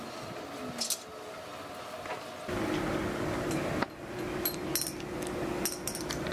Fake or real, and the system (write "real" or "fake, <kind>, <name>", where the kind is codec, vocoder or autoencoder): real